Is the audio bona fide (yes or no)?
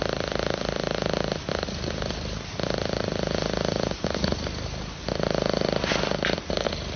yes